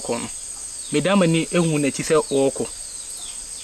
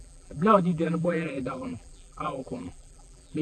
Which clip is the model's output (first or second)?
second